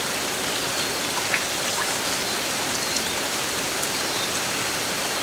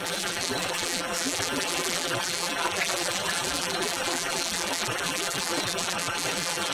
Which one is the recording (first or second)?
first